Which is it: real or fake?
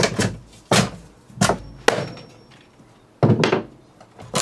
real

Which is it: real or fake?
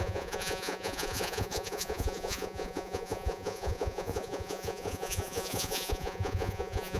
fake